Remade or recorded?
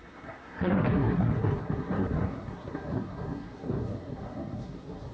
remade